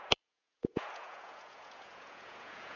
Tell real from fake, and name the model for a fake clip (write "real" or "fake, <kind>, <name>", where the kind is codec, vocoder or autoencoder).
fake, vocoder, Vocos